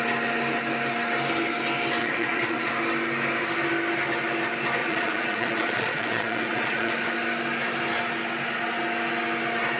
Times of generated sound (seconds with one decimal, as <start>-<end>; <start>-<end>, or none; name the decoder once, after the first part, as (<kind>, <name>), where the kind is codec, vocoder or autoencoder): 2.0-2.7 (vocoder, Vocos); 4.8-6.9